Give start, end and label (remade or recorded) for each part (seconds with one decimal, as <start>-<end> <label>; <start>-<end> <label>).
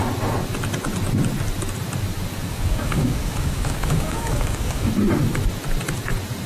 0.0-2.5 recorded; 2.5-4.9 remade; 4.9-6.5 recorded